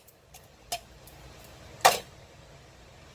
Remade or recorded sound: remade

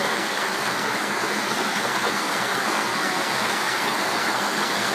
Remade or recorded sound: remade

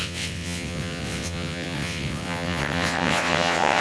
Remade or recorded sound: remade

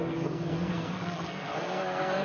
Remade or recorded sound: remade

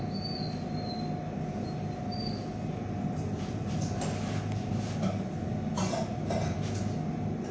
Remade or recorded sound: recorded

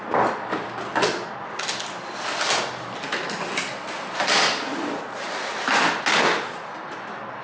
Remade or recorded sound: recorded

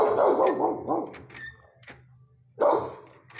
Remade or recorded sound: recorded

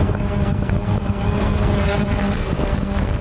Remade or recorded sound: remade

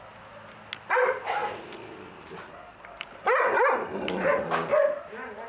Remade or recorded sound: recorded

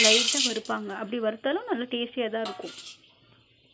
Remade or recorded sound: recorded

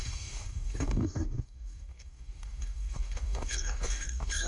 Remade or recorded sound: remade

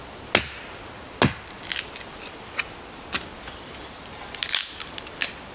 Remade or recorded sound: recorded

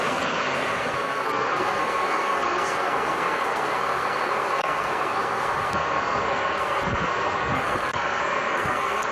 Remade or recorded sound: remade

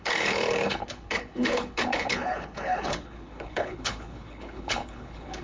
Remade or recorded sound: remade